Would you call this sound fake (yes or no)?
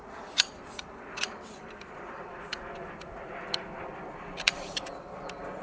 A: yes